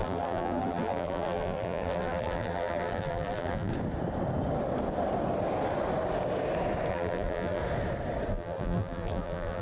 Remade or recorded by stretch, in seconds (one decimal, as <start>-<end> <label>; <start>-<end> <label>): 0.0-3.7 remade; 3.7-6.9 recorded; 6.9-7.6 remade; 7.6-8.3 recorded; 8.3-9.6 remade